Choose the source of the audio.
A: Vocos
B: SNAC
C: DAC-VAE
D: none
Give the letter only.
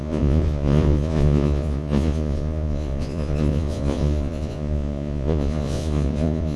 A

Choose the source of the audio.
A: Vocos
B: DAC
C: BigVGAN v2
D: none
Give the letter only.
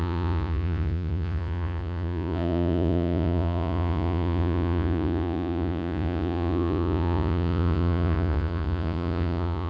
A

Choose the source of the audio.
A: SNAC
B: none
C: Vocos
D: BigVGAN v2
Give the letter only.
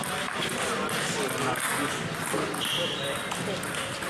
B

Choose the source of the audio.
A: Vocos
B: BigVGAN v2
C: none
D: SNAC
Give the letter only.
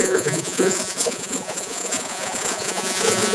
A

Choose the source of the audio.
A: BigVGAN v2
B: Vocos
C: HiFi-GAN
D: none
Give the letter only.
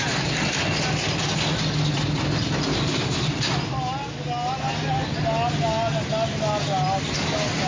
D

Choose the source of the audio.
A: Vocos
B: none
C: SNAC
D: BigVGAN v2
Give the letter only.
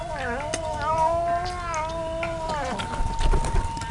B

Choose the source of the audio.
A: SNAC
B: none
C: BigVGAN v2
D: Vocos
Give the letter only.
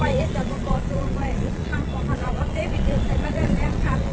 D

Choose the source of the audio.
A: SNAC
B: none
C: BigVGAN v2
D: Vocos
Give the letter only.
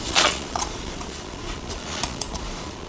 D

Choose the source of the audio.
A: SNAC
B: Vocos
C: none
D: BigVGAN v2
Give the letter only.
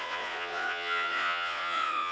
B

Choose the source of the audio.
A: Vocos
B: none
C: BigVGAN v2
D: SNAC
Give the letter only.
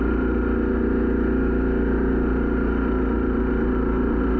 B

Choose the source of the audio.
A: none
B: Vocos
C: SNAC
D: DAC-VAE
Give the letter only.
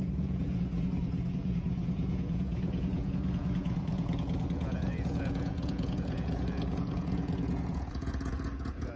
B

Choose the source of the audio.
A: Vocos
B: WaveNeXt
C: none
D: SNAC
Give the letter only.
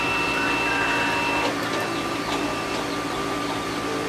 C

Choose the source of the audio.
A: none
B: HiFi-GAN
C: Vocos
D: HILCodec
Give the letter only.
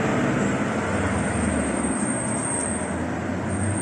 A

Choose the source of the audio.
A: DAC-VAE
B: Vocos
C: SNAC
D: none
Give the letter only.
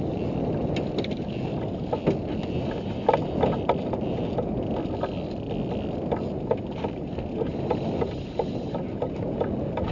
D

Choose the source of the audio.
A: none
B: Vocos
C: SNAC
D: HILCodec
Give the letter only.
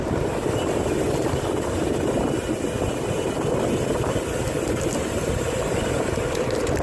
A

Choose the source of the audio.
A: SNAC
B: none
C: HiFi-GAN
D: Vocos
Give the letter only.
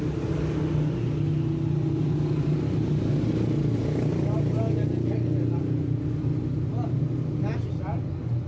B